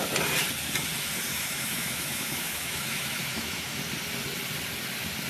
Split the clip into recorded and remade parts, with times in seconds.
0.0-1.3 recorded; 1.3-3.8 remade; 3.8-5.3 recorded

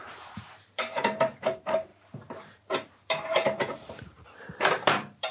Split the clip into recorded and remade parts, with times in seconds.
0.0-5.3 remade

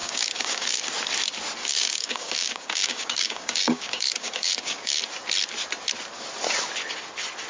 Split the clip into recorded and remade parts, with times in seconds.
0.0-0.8 remade; 0.8-1.6 recorded; 1.6-5.0 remade; 5.0-7.5 recorded

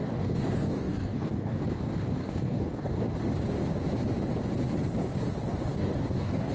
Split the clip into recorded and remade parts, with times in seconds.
0.0-1.6 remade; 1.6-2.2 recorded; 2.2-3.0 remade; 3.0-5.7 recorded; 5.7-6.5 remade

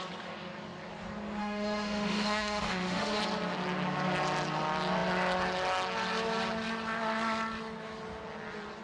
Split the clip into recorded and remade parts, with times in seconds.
0.0-1.4 recorded; 1.4-3.2 remade; 3.2-8.8 recorded

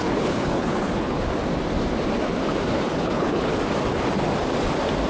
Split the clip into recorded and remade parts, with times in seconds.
0.0-1.2 remade; 1.2-2.7 recorded; 2.7-3.5 remade; 3.5-5.1 recorded

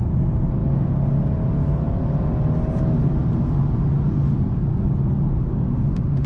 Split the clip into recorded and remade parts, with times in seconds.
0.0-5.5 recorded; 5.5-6.3 remade